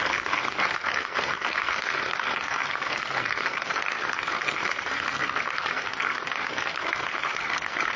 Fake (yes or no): yes